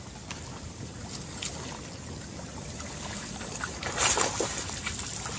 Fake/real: real